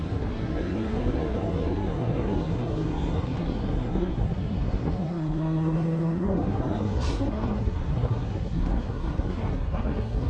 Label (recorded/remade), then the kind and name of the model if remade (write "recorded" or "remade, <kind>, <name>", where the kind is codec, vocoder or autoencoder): remade, codec, SNAC